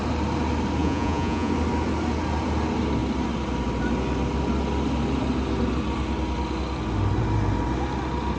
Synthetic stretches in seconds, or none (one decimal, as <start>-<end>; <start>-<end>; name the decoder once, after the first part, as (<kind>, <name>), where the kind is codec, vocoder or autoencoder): 0.8-1.5 (vocoder, Vocos)